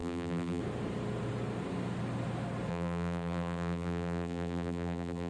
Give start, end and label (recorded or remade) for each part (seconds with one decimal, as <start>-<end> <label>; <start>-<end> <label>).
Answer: 0.0-0.6 remade; 0.6-2.7 recorded; 2.7-5.3 remade